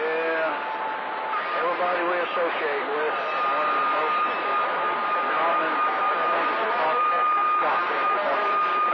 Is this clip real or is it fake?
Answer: real